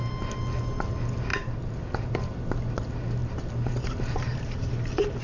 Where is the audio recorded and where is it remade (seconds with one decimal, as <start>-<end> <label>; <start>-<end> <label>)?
0.0-1.3 recorded; 1.3-2.1 remade; 2.1-3.2 recorded; 3.2-4.7 remade; 4.7-5.2 recorded